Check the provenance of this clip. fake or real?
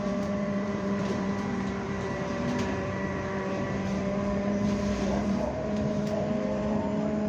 fake